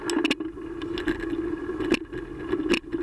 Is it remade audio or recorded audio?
recorded